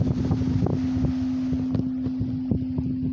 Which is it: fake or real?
real